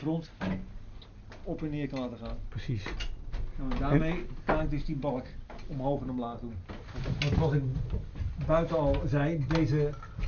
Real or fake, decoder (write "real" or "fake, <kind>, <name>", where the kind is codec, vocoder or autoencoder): real